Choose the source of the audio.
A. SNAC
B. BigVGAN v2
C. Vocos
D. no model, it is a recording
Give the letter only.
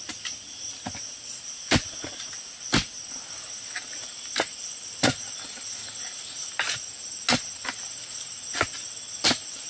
D